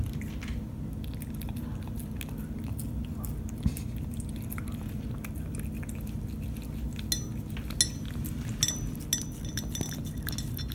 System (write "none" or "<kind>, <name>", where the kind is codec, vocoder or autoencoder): none